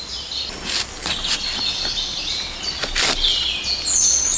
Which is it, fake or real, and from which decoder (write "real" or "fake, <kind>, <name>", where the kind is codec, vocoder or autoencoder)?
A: real